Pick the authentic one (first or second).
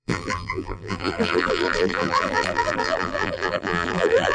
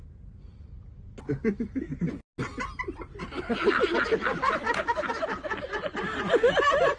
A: second